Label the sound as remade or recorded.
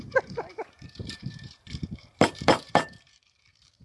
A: remade